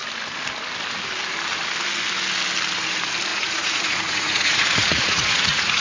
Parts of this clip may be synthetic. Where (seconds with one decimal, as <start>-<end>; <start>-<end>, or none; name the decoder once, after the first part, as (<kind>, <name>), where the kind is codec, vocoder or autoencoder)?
3.3-5.8 (vocoder, Vocos)